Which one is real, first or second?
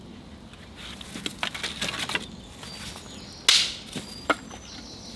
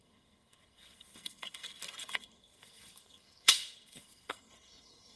first